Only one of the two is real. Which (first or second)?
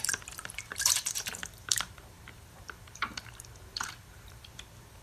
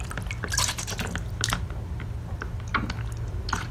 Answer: second